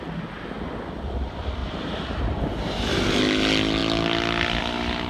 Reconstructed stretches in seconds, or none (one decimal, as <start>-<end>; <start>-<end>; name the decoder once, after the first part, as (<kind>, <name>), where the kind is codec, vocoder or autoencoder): 1.6-3.2 (vocoder, BigVGAN v2)